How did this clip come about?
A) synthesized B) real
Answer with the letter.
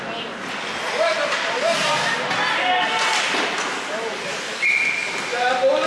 B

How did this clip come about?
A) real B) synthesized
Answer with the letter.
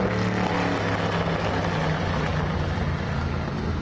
A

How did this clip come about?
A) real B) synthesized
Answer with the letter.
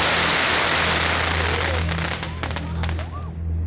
A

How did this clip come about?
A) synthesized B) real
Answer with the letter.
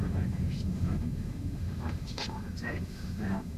A